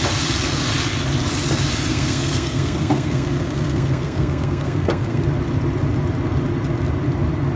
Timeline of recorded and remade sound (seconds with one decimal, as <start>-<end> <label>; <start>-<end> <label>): 0.0-1.9 recorded; 1.9-5.2 remade; 5.2-7.6 recorded